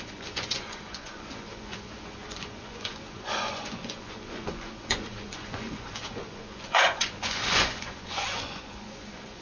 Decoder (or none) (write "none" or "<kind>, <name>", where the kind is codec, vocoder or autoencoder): vocoder, Vocos